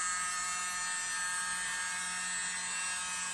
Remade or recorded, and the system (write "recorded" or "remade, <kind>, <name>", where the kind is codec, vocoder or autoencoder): recorded